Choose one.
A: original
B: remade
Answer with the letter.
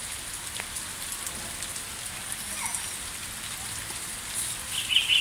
A